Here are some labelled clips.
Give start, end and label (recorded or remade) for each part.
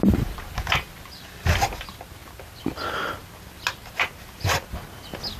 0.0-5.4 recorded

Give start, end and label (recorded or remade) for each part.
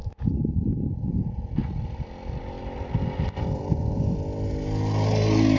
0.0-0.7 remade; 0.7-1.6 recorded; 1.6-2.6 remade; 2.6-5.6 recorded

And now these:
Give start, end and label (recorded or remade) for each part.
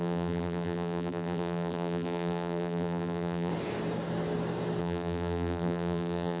0.0-3.5 remade; 3.5-4.8 recorded; 4.8-6.4 remade